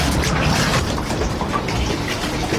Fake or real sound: fake